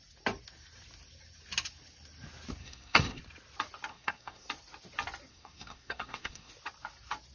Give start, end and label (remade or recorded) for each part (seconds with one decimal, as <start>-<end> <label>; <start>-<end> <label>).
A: 0.0-2.6 recorded; 2.6-3.2 remade; 3.2-3.9 recorded; 3.9-4.5 remade; 4.5-5.3 recorded; 5.3-6.5 remade; 6.5-7.3 recorded